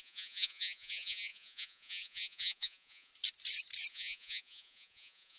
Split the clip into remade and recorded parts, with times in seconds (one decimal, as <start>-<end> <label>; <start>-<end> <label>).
0.0-3.1 remade; 3.1-3.9 recorded; 3.9-5.4 remade